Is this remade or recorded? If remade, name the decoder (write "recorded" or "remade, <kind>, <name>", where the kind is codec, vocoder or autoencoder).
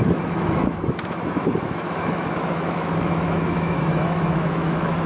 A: remade, autoencoder, DAC-VAE